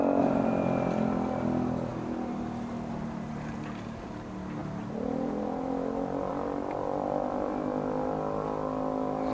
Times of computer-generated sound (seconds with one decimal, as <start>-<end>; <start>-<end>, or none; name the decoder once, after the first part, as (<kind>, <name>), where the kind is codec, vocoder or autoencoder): none